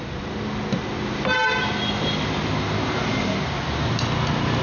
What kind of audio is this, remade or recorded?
recorded